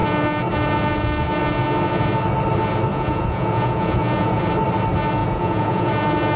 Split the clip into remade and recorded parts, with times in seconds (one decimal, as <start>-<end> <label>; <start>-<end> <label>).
0.0-2.9 recorded; 2.9-4.4 remade; 4.4-5.2 recorded; 5.2-5.9 remade; 5.9-6.4 recorded